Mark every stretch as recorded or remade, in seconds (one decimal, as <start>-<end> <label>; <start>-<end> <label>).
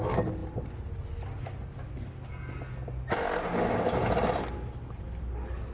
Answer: 0.0-5.7 recorded